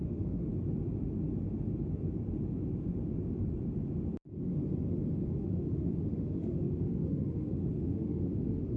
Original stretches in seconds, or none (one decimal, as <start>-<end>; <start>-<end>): 0.5-5.4